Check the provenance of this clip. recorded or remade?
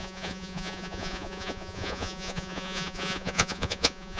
remade